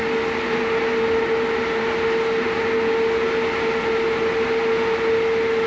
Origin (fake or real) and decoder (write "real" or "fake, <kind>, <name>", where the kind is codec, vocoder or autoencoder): real